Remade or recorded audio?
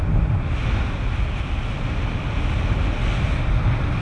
recorded